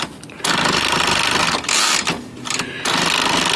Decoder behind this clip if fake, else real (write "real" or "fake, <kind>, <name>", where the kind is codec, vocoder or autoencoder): real